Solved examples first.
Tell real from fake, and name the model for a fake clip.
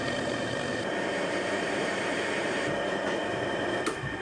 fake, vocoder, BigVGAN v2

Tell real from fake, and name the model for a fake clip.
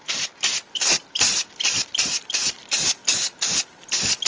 fake, vocoder, BigVGAN v2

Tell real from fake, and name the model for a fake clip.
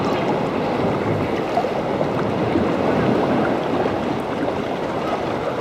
real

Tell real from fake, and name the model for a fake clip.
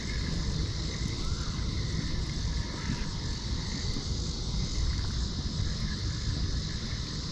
fake, vocoder, BigVGAN v2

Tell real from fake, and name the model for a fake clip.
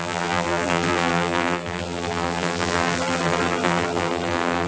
fake, vocoder, BigVGAN v2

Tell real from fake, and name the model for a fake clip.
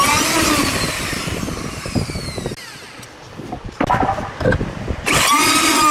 real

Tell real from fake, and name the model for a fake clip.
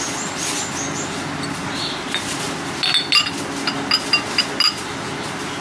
real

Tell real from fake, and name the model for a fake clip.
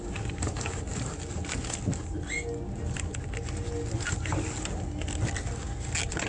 real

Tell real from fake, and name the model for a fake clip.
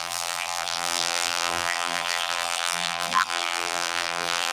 fake, vocoder, BigVGAN v2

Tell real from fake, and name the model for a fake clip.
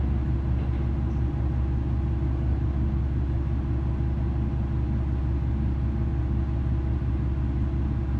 real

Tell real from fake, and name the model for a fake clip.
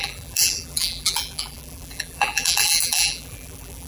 fake, vocoder, BigVGAN v2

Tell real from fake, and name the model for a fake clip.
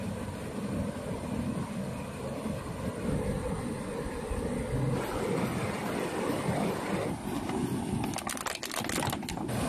real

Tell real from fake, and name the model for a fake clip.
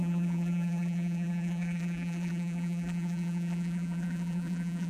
fake, vocoder, BigVGAN v2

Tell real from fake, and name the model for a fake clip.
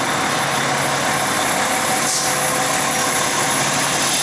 real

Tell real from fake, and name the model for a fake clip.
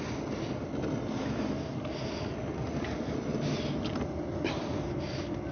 real